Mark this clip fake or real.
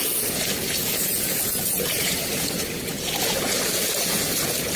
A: fake